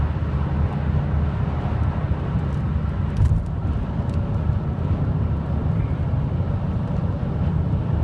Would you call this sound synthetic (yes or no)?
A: no